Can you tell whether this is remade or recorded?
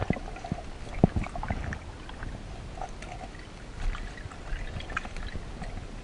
recorded